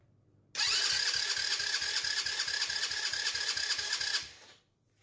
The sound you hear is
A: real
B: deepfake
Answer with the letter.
A